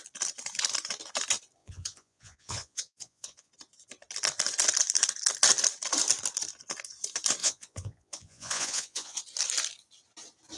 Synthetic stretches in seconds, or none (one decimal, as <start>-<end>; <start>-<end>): 1.6-3.5; 7.4-9.2